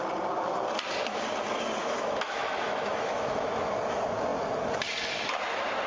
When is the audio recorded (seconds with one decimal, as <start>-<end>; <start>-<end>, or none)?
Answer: 0.0-1.8; 3.7-5.9